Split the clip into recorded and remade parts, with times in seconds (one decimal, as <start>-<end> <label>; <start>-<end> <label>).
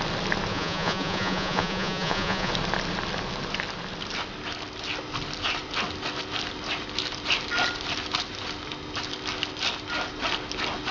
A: 0.0-0.5 recorded; 0.5-2.5 remade; 2.5-10.9 recorded